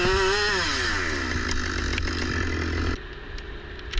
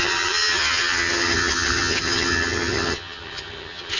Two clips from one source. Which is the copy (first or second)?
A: second